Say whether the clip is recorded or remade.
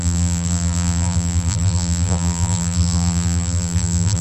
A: remade